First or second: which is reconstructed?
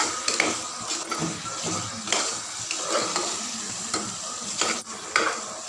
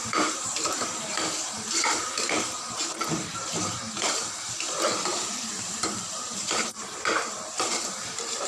second